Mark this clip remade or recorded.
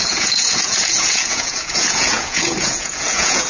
remade